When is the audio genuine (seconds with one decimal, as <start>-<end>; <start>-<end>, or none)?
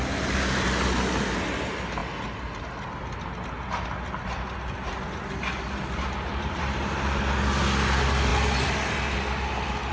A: 0.0-6.3; 7.2-9.9